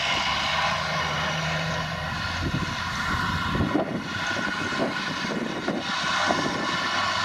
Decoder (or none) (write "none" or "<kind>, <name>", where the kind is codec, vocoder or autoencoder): none